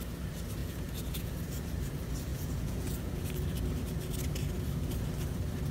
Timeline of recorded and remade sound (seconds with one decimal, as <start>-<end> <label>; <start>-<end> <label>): 0.0-0.6 recorded; 0.6-1.3 remade; 1.3-2.3 recorded; 2.3-3.2 remade; 3.2-5.7 recorded